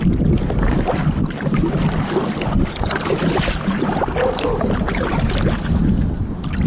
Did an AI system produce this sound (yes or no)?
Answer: no